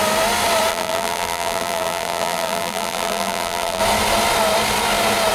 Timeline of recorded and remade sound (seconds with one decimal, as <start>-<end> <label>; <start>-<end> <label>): 0.0-0.7 recorded; 0.7-3.8 remade; 3.8-5.3 recorded